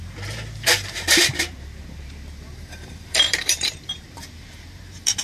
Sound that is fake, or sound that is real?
fake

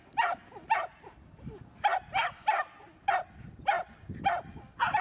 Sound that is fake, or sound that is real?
real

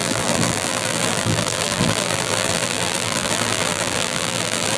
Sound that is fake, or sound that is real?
fake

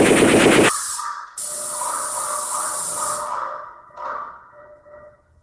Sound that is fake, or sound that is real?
real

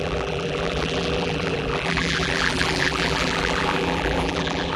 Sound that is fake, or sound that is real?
fake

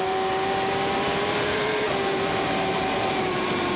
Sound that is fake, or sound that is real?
fake